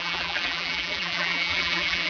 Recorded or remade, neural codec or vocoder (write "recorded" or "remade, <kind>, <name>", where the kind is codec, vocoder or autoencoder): remade, vocoder, BigVGAN v2